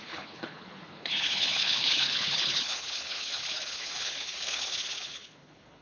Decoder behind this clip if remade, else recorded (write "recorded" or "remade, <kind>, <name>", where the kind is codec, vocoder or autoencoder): remade, codec, HILCodec